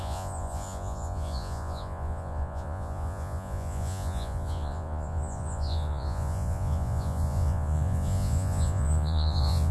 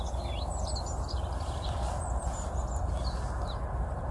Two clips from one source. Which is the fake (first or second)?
first